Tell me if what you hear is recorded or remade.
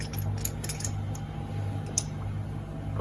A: recorded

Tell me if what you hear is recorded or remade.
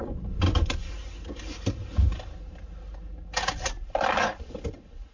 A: recorded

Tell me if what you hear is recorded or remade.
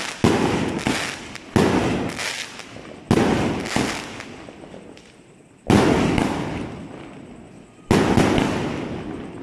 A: recorded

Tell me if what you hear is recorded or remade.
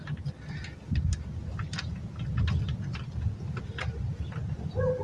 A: recorded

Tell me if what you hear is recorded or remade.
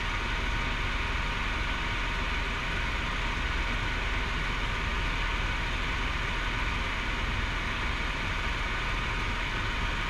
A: recorded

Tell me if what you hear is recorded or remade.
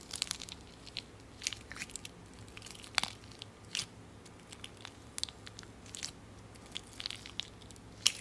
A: recorded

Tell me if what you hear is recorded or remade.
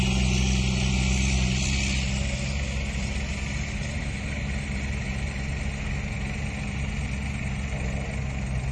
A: recorded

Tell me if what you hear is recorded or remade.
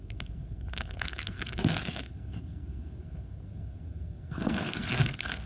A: remade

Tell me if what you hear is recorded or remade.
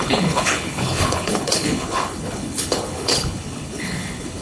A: remade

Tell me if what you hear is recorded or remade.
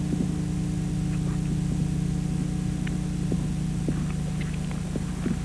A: recorded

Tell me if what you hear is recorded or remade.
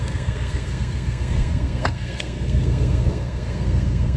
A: remade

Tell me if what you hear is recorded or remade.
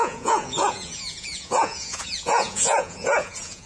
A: remade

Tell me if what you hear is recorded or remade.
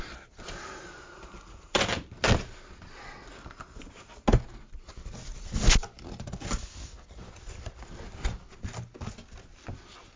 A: recorded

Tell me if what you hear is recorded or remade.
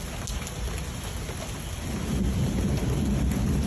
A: recorded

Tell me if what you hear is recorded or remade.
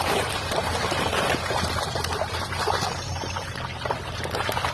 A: recorded